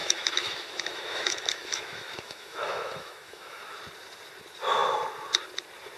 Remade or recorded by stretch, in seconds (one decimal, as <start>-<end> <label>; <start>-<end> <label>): 0.0-3.6 remade; 3.6-6.0 recorded